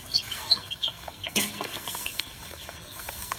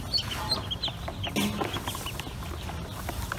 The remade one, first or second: first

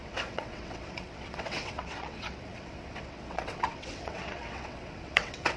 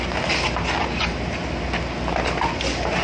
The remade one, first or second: first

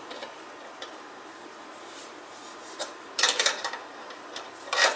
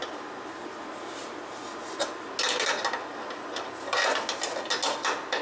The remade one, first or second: first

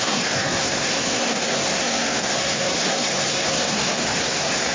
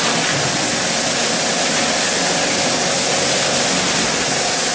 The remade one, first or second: first